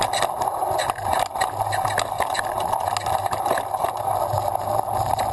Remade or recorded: recorded